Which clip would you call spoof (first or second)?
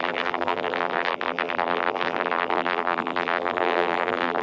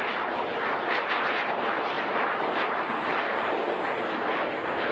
first